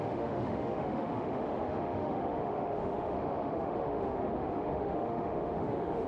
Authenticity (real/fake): fake